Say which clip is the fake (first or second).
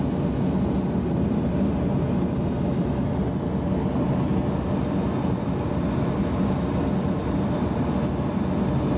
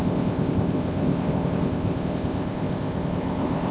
second